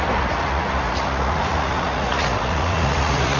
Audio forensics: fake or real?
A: fake